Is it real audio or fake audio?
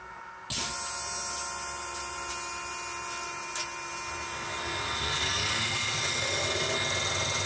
real